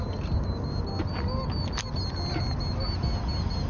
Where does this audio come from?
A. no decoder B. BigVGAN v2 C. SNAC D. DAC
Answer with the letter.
A